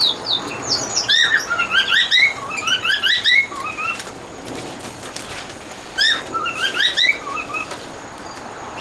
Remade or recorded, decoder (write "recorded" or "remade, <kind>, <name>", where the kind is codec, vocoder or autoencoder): recorded